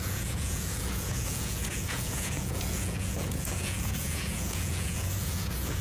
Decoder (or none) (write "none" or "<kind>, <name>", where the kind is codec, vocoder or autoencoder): vocoder, Vocos